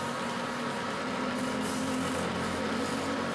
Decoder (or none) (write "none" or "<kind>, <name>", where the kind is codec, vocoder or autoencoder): none